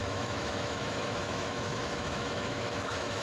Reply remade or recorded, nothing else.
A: remade